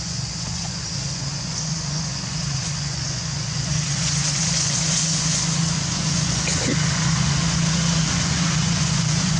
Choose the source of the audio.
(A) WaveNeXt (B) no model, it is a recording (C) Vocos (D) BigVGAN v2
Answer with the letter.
C